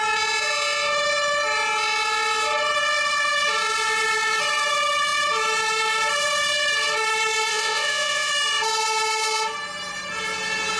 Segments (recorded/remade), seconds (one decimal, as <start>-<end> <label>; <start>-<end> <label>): 0.0-7.5 recorded; 7.5-8.3 remade; 8.3-10.8 recorded